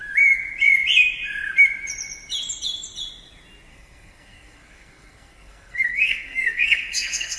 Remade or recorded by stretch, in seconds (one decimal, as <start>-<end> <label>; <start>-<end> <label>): 0.0-3.7 recorded; 3.7-7.4 remade